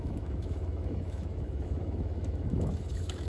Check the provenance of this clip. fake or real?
fake